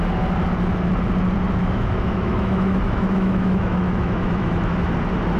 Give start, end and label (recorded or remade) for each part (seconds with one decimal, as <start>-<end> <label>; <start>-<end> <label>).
0.0-1.6 recorded; 1.6-4.8 remade; 4.8-5.4 recorded